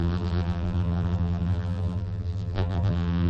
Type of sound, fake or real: fake